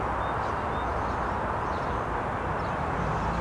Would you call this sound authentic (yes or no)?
yes